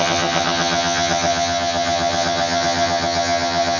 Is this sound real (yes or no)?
no